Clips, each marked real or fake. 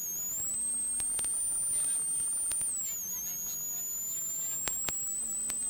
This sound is real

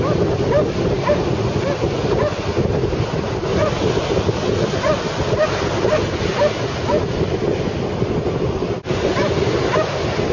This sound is real